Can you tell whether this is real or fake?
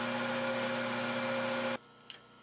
real